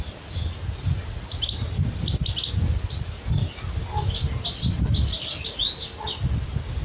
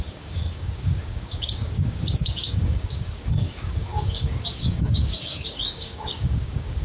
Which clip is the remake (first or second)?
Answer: second